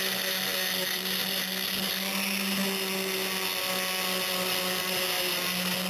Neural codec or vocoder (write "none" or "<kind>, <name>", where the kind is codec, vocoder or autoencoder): none